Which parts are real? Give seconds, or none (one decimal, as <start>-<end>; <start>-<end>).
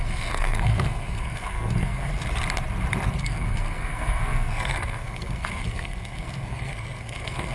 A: 2.1-3.2